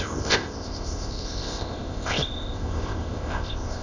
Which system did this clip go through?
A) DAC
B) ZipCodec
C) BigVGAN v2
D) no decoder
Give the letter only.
B